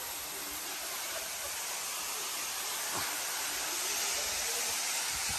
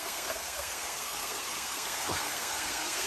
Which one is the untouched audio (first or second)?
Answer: first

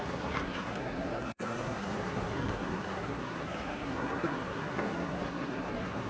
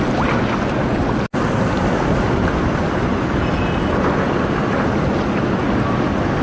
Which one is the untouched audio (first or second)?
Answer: second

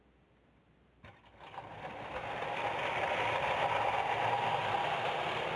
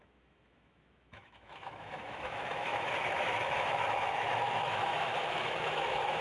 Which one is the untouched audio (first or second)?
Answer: first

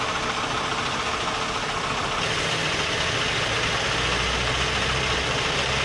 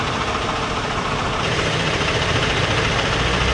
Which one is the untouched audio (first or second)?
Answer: first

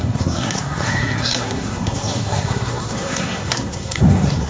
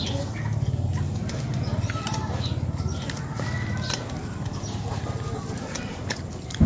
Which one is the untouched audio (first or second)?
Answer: second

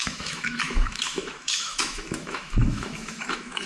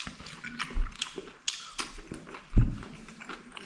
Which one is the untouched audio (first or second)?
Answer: second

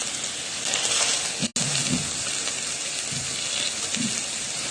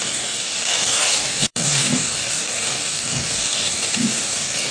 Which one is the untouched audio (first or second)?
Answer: first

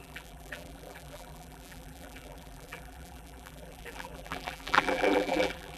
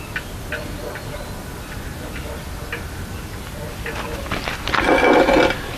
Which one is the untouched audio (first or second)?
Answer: second